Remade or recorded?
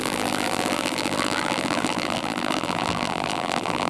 remade